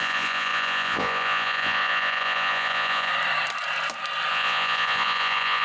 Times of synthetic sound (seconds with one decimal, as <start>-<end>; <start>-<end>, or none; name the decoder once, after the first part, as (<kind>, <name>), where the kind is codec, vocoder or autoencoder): 0.0-3.1 (vocoder, Vocos); 4.3-5.6